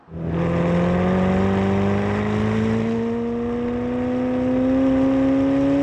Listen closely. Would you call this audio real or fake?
real